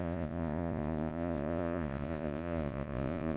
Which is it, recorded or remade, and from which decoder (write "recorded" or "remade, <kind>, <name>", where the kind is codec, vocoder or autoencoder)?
remade, vocoder, Vocos